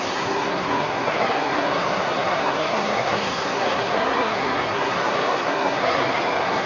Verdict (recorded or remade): remade